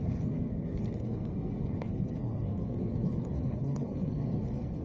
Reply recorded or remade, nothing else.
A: remade